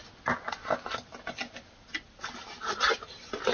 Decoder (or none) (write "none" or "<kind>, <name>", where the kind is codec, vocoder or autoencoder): none